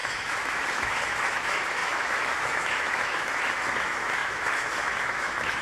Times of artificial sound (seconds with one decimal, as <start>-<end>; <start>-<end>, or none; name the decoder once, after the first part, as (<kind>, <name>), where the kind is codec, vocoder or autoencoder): 0.0-5.6 (autoencoder, DAC-VAE)